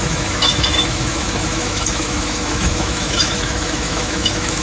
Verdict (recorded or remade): remade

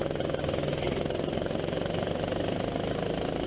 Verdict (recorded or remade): recorded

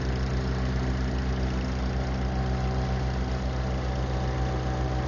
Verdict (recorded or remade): recorded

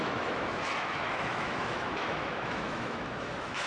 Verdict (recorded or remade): remade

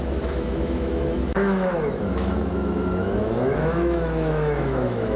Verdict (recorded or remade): remade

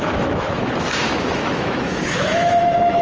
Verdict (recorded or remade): remade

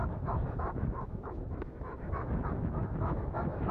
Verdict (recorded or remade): remade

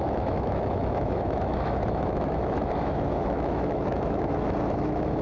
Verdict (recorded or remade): remade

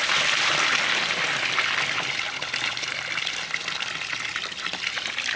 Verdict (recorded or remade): recorded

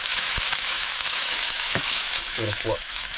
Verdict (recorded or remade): remade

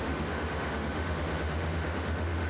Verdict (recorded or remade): remade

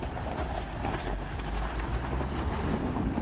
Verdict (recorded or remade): recorded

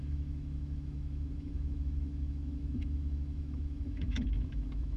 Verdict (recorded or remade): remade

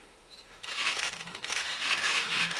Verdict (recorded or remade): remade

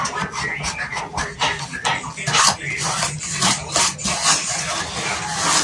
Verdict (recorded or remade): recorded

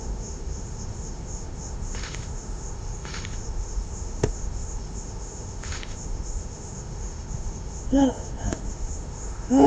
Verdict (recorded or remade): remade